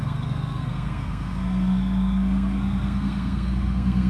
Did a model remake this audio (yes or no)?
yes